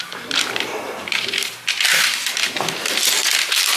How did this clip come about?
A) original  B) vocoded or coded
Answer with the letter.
A